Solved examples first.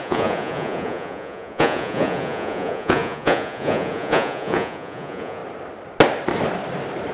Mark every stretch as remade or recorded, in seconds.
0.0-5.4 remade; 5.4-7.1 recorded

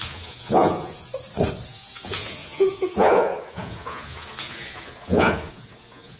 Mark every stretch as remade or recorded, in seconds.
0.0-1.1 remade; 1.1-1.7 recorded; 1.7-6.2 remade

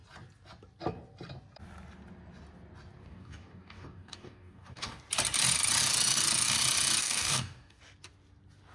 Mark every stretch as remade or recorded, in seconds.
0.0-3.0 recorded; 3.0-5.0 remade; 5.0-7.0 recorded; 7.0-7.8 remade; 7.8-8.7 recorded

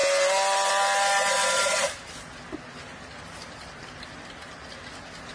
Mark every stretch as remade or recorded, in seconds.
0.0-1.4 recorded; 1.4-2.0 remade; 2.0-5.3 recorded

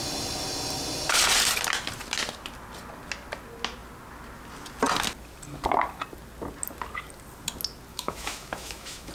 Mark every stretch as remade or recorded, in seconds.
0.0-7.9 recorded; 7.9-9.1 remade

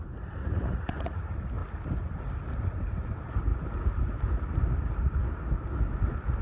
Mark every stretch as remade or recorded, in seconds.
0.0-0.4 recorded; 0.4-1.2 remade; 1.2-6.4 recorded